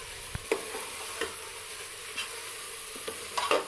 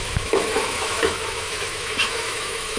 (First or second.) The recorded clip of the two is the first